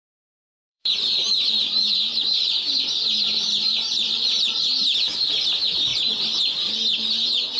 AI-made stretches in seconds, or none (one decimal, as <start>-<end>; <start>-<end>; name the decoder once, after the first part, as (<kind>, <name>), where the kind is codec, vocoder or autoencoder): 0.0-4.3 (vocoder, BigVGAN v2)